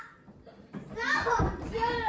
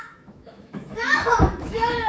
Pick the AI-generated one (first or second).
second